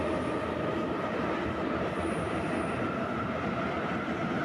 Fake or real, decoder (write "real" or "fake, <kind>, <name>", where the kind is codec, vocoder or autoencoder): real